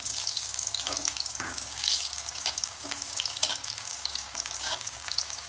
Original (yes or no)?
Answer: no